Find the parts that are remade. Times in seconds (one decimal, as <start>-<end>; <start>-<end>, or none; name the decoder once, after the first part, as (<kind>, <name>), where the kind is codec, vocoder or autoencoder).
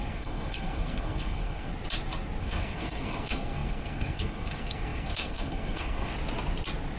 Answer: 0.0-1.7 (codec, SNAC); 2.4-6.1